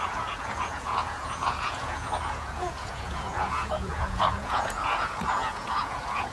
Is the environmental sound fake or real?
fake